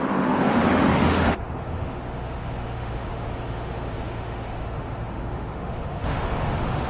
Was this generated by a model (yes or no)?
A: yes